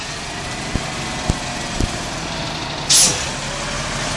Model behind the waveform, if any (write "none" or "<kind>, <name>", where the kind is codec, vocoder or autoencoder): none